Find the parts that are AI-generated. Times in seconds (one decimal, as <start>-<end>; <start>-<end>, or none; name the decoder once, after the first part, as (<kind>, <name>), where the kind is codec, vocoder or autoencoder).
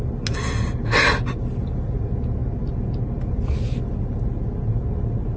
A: none